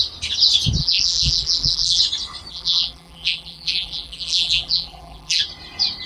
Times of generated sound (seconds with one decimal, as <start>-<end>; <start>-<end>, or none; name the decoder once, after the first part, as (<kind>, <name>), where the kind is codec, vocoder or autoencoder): 0.8-2.0 (vocoder, BigVGAN v2); 2.5-5.4